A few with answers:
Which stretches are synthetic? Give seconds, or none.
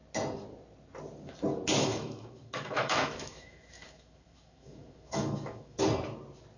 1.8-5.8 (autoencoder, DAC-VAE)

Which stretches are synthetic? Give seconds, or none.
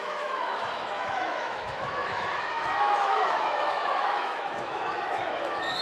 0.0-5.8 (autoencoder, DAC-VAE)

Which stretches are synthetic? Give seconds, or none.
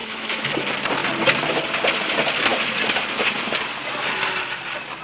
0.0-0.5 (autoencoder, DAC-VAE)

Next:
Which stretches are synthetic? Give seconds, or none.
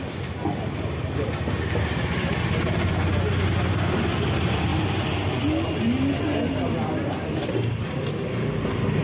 none